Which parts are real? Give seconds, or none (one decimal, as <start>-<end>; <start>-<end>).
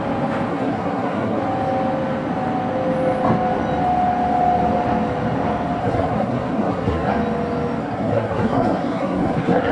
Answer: 0.0-0.5; 1.4-5.8; 7.1-7.8